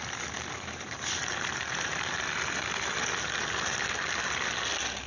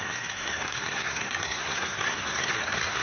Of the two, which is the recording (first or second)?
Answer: first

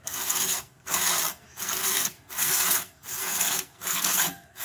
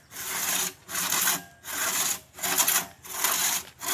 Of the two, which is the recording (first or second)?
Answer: second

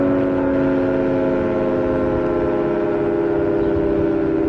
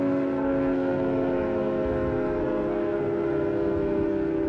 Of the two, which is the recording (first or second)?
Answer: first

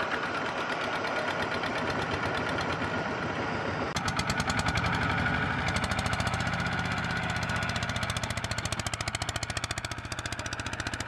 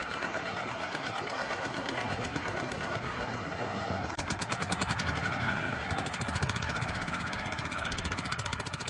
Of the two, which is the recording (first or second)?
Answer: first